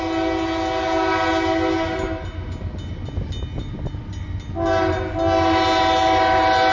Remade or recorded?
recorded